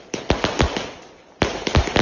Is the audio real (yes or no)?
no